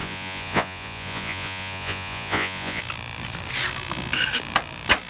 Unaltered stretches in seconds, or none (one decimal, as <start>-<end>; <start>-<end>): 2.8-5.1